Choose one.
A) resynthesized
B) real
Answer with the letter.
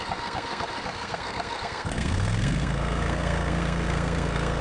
A